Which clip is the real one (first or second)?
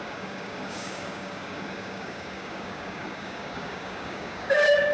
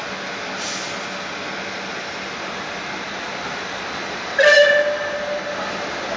second